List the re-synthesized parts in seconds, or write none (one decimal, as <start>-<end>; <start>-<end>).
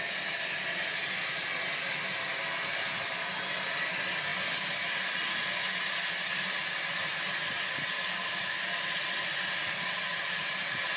none